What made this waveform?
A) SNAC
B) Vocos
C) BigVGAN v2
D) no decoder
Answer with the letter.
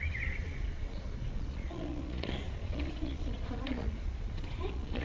B